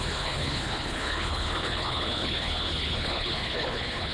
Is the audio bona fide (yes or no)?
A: no